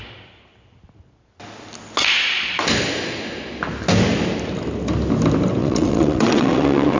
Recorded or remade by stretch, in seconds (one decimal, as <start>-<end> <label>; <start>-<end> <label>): 0.0-5.6 recorded; 5.6-7.0 remade